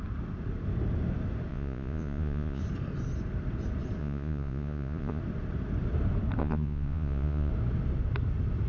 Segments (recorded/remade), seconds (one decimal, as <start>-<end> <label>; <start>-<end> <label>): 0.0-1.5 recorded; 1.5-2.6 remade; 2.6-4.0 recorded; 4.0-5.2 remade; 5.2-6.4 recorded; 6.4-7.5 remade; 7.5-8.7 recorded